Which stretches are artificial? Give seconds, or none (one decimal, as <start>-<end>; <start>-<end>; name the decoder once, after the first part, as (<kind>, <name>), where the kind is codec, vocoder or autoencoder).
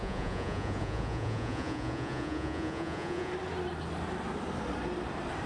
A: 0.0-3.3 (vocoder, Vocos)